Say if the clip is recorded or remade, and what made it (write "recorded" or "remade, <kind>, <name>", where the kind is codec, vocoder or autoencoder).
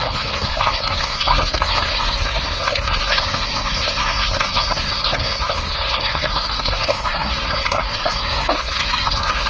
remade, codec, SNAC